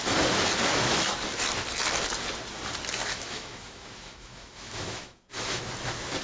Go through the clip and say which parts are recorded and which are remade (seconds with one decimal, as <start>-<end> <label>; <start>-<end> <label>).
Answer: 0.0-3.1 recorded; 3.1-5.6 remade; 5.6-6.2 recorded